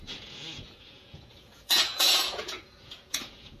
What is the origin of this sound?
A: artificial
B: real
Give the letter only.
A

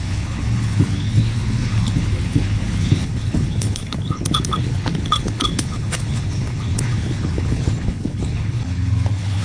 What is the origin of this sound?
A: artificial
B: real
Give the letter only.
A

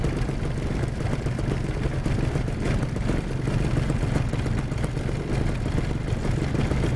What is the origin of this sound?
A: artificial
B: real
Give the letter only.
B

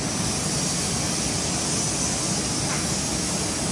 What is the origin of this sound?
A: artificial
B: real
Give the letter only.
B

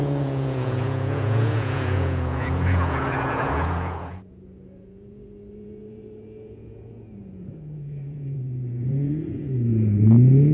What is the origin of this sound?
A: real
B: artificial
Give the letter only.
B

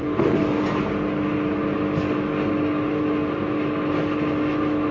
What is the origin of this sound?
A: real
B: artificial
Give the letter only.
A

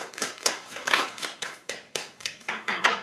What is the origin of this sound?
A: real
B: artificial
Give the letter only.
B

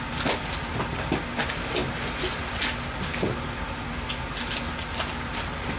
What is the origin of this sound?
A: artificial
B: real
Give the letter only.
B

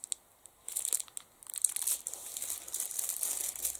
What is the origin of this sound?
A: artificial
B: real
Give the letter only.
B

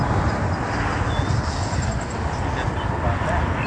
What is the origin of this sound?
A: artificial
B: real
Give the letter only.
B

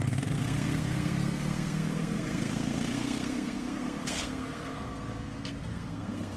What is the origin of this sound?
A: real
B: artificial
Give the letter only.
B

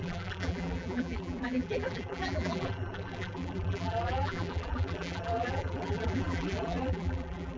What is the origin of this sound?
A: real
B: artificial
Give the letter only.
B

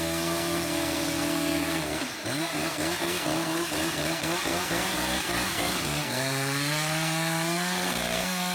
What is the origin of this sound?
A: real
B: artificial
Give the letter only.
B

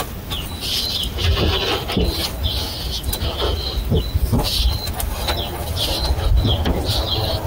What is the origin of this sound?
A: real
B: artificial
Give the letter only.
A